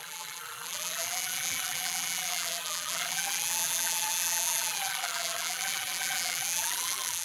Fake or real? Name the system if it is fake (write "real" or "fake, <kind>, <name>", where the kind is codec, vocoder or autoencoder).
fake, vocoder, BigVGAN v2